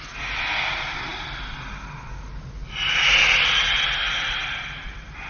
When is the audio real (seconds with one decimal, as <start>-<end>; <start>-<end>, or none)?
0.0-5.3